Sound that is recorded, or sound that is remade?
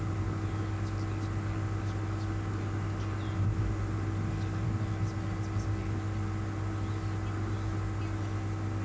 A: recorded